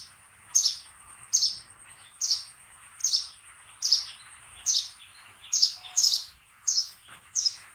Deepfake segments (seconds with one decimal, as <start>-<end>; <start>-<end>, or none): 0.0-1.3; 1.9-3.0; 4.4-7.7